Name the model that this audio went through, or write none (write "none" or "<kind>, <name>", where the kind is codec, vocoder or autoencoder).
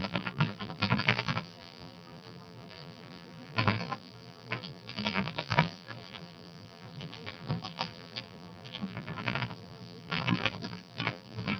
vocoder, BigVGAN v2